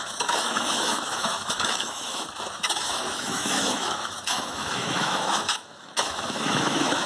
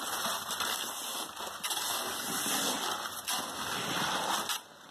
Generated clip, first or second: first